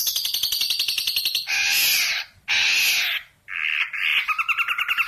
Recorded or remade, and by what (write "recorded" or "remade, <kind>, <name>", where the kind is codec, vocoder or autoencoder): recorded